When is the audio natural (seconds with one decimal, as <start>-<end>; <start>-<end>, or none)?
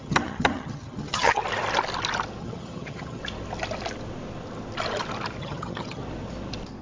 1.4-2.4; 3.2-5.4; 6.0-6.8